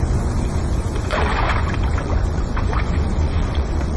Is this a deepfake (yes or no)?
yes